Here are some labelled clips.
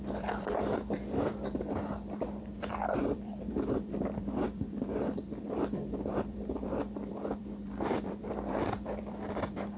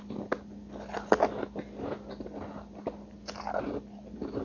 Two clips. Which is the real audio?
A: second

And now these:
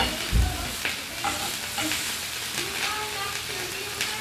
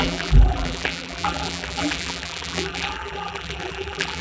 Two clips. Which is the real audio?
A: first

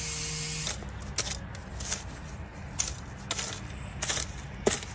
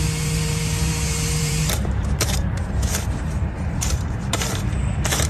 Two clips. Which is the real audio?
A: first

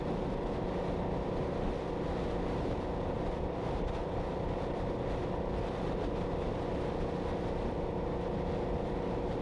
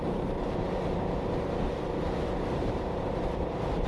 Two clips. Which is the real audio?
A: first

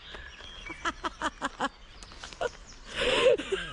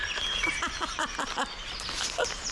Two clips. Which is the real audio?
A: first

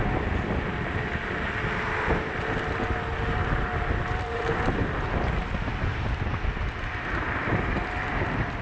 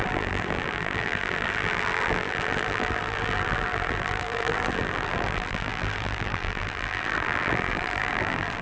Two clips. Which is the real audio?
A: first